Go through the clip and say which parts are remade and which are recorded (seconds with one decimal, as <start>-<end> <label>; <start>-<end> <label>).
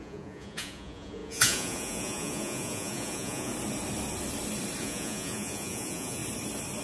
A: 0.0-3.5 remade; 3.5-4.8 recorded; 4.8-6.2 remade; 6.2-6.8 recorded